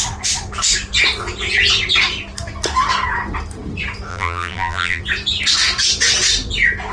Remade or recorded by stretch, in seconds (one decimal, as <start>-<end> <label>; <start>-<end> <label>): 0.0-4.1 recorded; 4.1-5.0 remade; 5.0-6.9 recorded